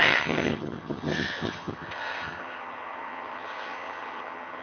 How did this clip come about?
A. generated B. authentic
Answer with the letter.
A